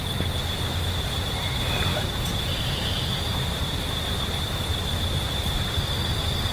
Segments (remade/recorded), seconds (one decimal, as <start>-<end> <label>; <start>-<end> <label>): 0.0-1.8 recorded; 1.8-3.4 remade; 3.4-4.2 recorded; 4.2-4.9 remade; 4.9-6.5 recorded